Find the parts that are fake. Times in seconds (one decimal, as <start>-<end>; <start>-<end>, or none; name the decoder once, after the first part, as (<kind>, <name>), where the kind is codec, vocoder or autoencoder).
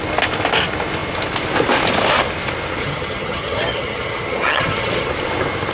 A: 2.8-5.1 (vocoder, HiFi-GAN)